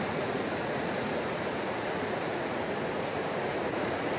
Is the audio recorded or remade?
remade